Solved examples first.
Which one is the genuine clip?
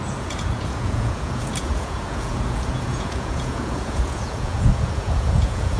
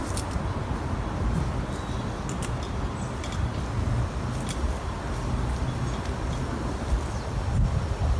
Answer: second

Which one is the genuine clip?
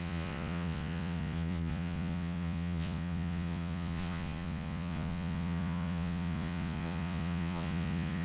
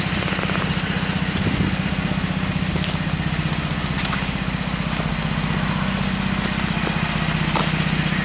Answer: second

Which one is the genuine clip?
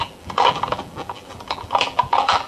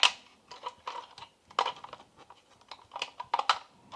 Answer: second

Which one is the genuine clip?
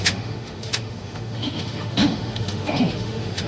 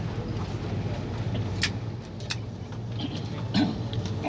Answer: second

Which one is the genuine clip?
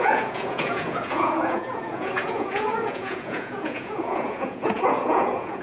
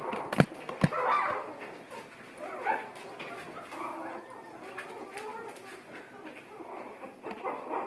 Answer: second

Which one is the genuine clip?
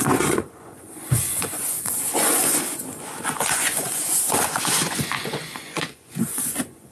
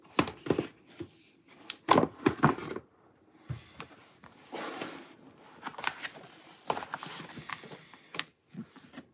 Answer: second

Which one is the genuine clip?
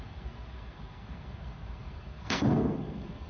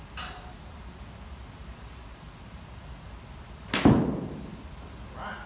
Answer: second